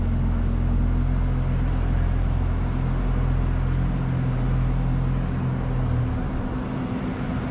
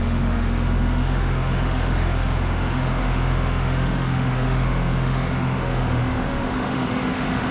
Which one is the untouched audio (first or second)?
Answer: first